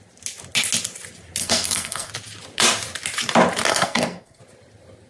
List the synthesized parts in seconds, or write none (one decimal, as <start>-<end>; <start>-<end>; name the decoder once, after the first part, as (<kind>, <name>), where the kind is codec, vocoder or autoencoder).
1.4-2.1 (codec, SNAC); 3.7-4.4